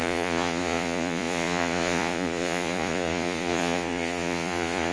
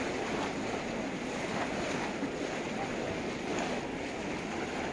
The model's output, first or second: first